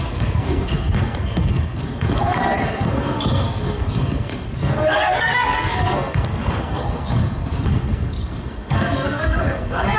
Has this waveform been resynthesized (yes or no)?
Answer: yes